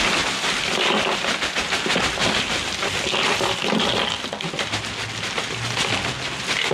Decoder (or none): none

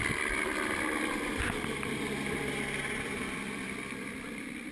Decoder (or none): vocoder, BigVGAN v2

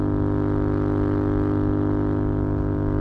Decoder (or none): none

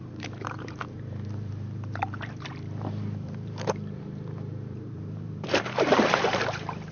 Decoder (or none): vocoder, BigVGAN v2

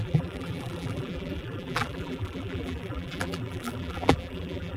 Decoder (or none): vocoder, BigVGAN v2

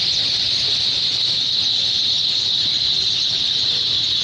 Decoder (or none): none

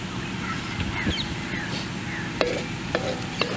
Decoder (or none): none